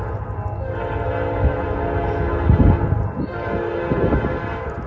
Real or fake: real